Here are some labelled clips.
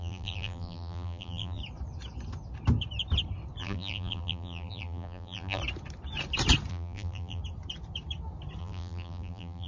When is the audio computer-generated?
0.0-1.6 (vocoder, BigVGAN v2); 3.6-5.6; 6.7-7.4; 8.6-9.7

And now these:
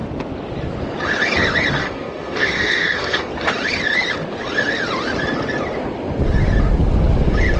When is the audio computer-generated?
1.8-3.3 (codec, SNAC)

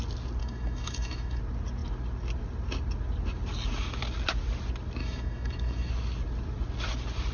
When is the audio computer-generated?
0.4-1.4 (autoencoder, DAC-VAE); 5.0-5.9